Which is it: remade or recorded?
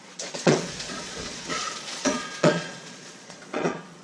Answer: remade